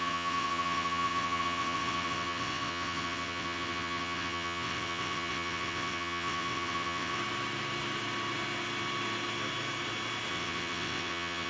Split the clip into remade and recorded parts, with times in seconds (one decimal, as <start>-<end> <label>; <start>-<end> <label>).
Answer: 0.0-7.2 remade; 7.2-10.3 recorded; 10.3-11.5 remade